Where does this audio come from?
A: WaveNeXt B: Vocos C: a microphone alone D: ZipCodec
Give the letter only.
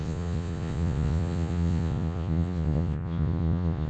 B